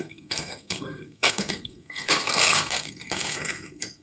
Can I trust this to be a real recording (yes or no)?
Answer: no